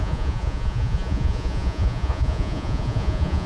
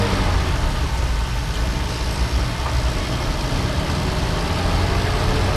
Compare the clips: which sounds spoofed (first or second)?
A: first